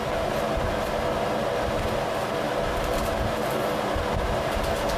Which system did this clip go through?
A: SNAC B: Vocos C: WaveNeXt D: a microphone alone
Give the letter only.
D